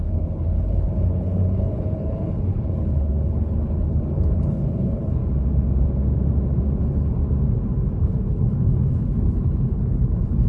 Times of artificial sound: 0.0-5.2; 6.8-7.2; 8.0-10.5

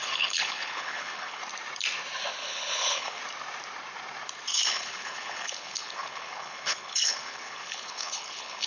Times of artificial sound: 0.0-1.4; 2.4-3.2; 4.5-8.7

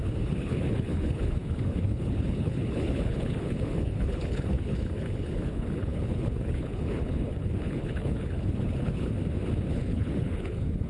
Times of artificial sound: 0.0-9.2; 9.7-10.9

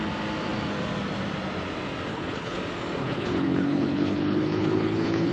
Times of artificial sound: 2.1-2.6; 3.0-5.3

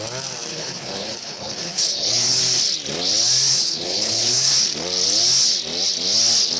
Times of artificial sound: 0.5-2.4; 3.5-4.5

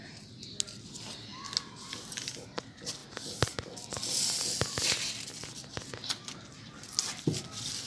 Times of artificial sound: none